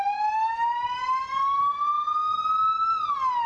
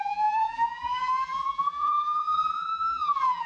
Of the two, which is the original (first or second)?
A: first